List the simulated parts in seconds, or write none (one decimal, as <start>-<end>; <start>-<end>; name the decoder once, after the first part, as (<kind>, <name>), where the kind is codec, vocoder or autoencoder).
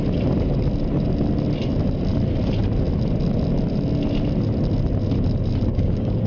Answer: 5.7-6.3 (codec, DAC)